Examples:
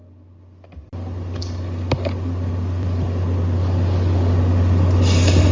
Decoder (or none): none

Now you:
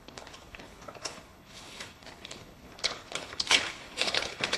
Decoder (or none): codec, HILCodec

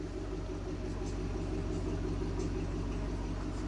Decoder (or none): none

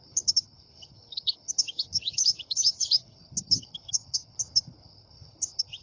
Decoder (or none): codec, HILCodec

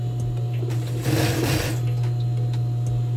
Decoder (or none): none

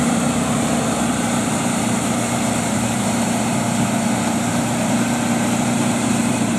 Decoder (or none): vocoder, BigVGAN v2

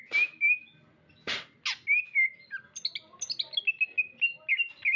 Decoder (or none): none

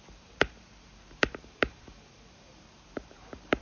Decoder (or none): vocoder, BigVGAN v2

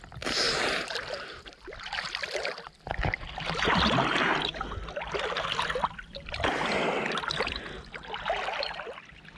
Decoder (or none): none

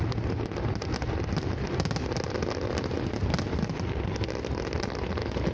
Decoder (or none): none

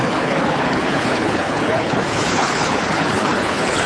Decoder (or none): codec, HILCodec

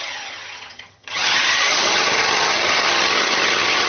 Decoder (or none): vocoder, HiFi-GAN